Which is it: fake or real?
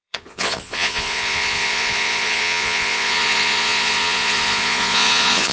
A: fake